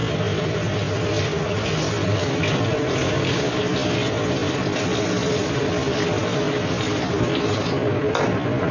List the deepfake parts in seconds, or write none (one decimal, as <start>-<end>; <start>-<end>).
3.0-3.6